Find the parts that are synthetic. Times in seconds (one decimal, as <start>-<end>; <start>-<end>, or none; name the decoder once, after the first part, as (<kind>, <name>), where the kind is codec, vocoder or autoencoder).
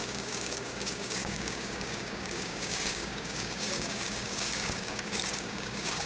0.0-6.1 (codec, DAC)